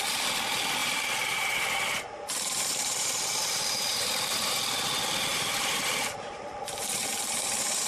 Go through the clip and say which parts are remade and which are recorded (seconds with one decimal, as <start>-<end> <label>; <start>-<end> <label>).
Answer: 0.0-0.8 recorded; 0.8-4.6 remade; 4.6-5.3 recorded; 5.3-6.4 remade; 6.4-7.9 recorded